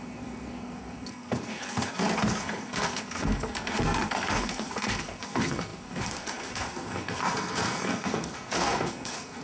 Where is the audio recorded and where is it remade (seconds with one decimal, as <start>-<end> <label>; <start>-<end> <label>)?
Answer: 0.0-9.4 remade